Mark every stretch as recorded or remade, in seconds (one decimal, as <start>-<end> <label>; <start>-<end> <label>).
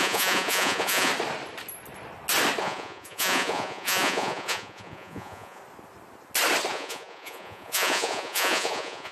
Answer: 0.0-1.1 remade; 1.1-2.6 recorded; 2.6-5.6 remade; 5.6-6.7 recorded; 6.7-9.1 remade